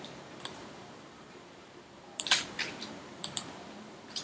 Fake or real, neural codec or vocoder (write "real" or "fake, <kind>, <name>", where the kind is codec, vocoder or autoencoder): fake, vocoder, BigVGAN v2